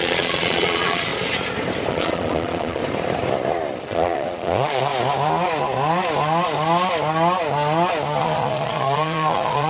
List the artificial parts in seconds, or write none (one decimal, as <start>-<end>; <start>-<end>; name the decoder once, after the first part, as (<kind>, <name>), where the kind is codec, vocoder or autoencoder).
0.0-1.1 (vocoder, Vocos); 1.9-2.8; 3.8-4.9; 8.2-9.7